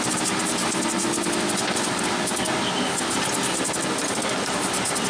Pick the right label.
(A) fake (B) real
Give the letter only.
B